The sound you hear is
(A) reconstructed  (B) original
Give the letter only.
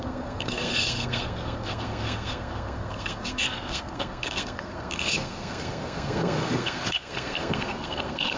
A